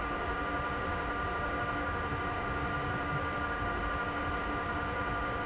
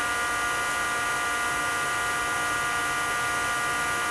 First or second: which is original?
second